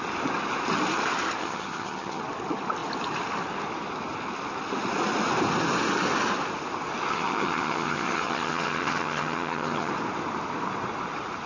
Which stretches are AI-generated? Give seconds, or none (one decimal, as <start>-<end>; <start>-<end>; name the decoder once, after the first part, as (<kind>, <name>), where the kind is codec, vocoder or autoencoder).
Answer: 1.4-2.2 (vocoder, HiFi-GAN); 7.1-9.9